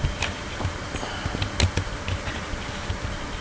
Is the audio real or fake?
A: real